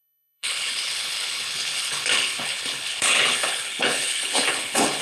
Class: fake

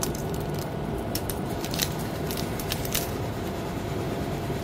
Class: fake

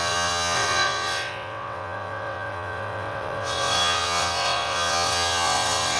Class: fake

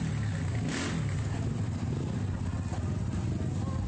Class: real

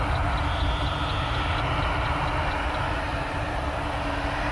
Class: real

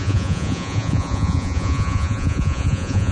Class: fake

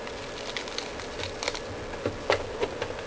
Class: real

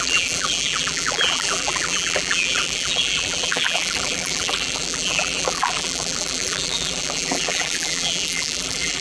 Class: fake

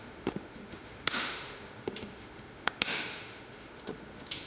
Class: fake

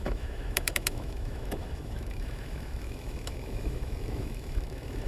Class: fake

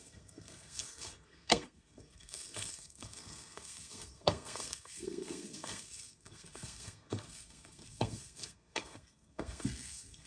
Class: fake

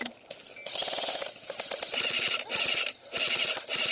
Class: fake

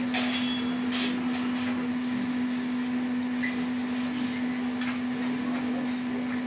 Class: real